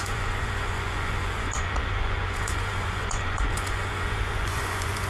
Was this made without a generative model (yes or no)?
no